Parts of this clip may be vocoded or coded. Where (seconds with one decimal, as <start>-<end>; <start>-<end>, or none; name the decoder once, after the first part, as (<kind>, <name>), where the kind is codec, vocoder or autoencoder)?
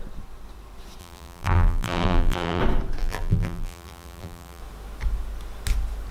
1.0-2.6 (vocoder, BigVGAN v2); 3.0-4.6